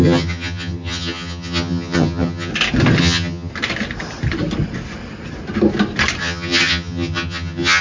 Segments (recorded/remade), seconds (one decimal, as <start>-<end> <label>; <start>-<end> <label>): 0.0-2.5 remade; 2.5-3.0 recorded; 3.0-3.5 remade; 3.5-6.2 recorded; 6.2-7.8 remade